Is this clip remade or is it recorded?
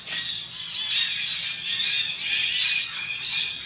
recorded